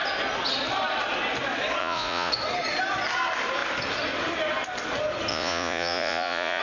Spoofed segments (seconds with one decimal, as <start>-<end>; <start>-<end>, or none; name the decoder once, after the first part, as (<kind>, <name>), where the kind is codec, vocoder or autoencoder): 1.8-2.3 (vocoder, Vocos); 5.3-6.6